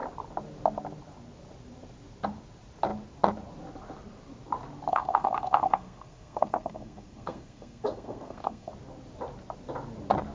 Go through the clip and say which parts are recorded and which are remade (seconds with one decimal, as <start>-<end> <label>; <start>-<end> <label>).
0.0-4.9 recorded; 4.9-8.7 remade; 8.7-10.3 recorded